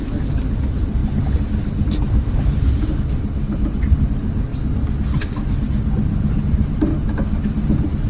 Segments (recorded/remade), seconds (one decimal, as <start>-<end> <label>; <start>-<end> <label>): 0.0-8.1 recorded